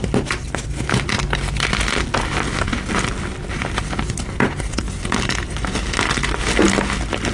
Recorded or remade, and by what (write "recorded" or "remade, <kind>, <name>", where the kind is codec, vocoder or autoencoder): recorded